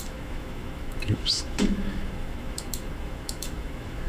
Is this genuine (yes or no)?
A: no